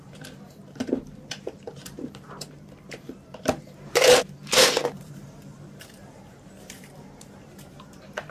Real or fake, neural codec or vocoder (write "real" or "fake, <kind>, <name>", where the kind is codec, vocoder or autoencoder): fake, vocoder, BigVGAN v2